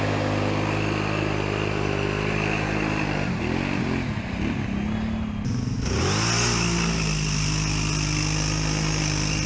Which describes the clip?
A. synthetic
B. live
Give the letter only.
B